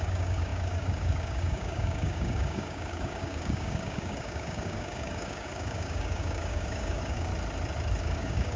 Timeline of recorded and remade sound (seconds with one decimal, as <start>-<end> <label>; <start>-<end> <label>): 0.0-7.3 remade; 7.3-8.0 recorded; 8.0-8.6 remade